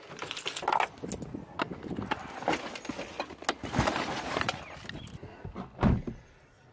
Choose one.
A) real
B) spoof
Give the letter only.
A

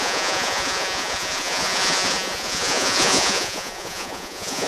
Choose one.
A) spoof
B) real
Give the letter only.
A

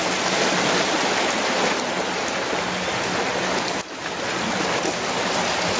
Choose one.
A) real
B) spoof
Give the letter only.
A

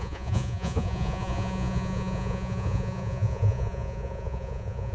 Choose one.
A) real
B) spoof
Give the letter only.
B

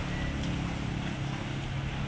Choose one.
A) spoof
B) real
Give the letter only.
B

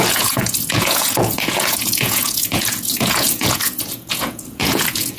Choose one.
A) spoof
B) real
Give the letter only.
A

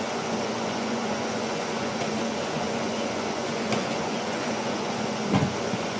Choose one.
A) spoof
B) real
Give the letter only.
A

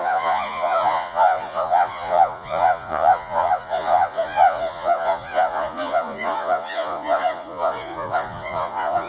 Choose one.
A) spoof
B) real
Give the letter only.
A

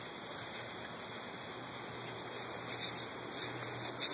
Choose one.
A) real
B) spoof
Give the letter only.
A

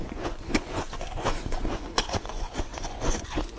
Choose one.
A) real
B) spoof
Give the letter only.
B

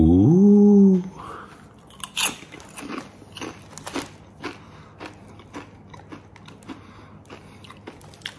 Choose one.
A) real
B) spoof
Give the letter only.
A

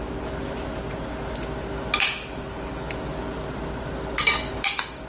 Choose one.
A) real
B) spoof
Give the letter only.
A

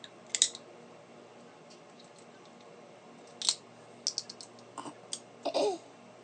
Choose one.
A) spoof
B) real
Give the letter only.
B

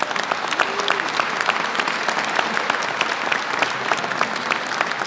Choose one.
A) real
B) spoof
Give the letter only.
A